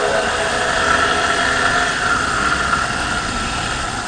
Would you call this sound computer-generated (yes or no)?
no